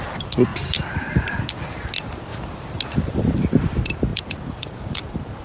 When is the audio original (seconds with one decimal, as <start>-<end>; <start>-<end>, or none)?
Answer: 0.0-2.3; 2.8-4.1